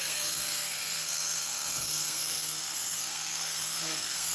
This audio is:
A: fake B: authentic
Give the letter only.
A